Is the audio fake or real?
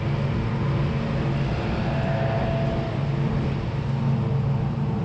real